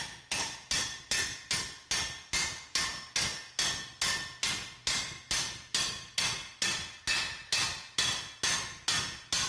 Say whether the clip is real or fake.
real